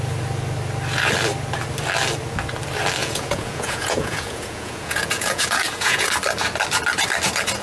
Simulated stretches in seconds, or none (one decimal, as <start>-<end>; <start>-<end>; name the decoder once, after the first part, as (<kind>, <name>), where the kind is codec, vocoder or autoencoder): 3.0-6.1 (vocoder, Vocos)